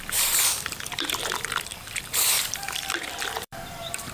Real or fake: fake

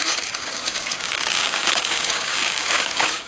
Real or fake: fake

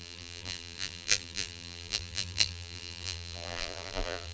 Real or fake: fake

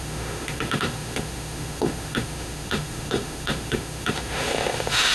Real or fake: fake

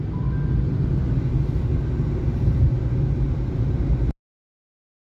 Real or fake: real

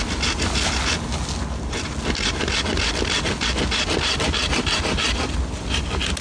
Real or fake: real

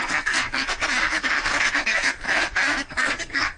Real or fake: fake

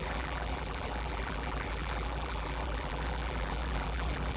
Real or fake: fake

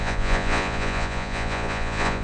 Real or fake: fake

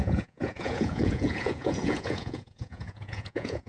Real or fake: fake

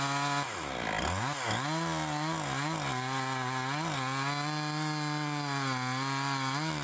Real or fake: real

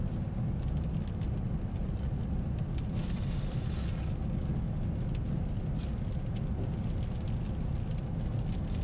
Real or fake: real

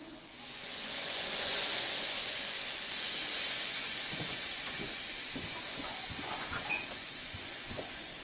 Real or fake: fake